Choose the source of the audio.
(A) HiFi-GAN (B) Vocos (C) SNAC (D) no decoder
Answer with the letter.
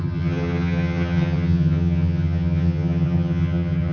A